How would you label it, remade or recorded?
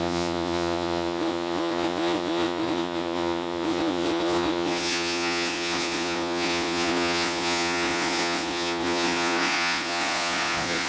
remade